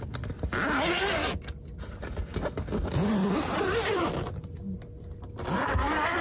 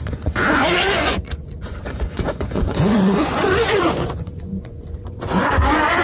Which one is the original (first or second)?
first